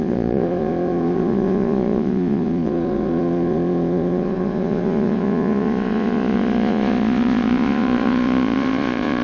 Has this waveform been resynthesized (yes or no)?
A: yes